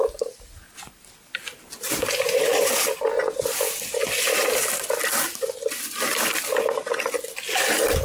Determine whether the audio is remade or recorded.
recorded